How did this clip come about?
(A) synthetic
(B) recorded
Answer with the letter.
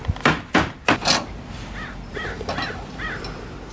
B